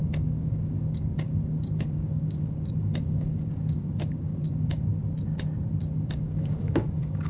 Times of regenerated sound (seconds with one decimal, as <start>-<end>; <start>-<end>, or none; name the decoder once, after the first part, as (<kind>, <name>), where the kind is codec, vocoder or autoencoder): 0.0-4.9 (codec, DAC); 5.8-7.3